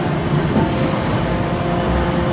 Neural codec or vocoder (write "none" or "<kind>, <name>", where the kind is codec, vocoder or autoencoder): vocoder, BigVGAN v2